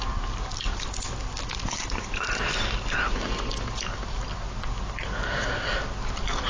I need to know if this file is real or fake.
real